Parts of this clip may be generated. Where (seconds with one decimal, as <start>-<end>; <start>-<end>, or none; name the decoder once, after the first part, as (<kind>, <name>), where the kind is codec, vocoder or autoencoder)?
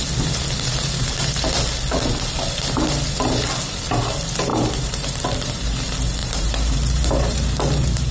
4.5-5.1 (vocoder, BigVGAN v2); 6.2-8.1